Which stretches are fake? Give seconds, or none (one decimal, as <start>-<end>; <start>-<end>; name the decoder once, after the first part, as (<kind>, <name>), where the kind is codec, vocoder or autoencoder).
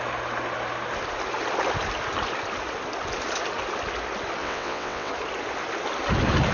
4.4-5.1 (vocoder, WaveNeXt)